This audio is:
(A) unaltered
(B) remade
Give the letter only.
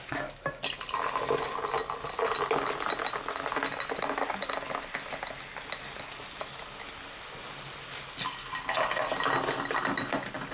A